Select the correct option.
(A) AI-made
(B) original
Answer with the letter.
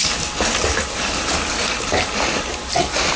B